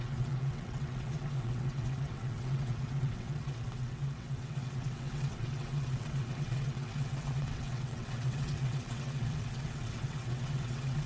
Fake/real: fake